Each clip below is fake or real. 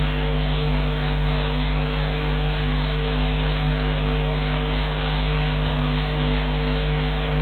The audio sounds fake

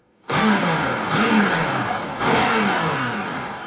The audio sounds fake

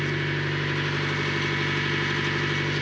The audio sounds real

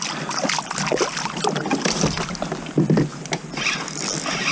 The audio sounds real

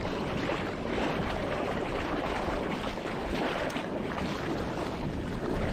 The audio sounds real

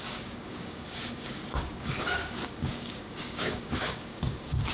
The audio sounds fake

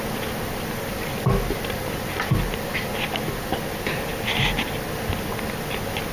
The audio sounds real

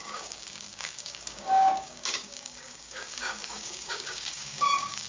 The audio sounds fake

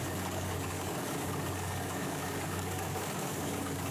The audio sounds fake